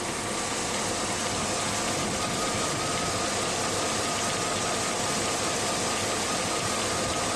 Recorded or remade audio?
recorded